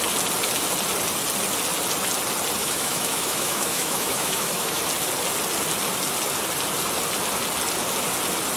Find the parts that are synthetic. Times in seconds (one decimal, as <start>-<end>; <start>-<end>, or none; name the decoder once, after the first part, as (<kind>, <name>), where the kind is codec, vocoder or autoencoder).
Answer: 2.6-4.8 (autoencoder, DAC-VAE)